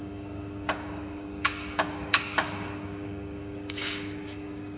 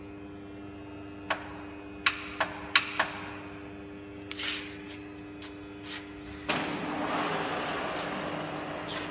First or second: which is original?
second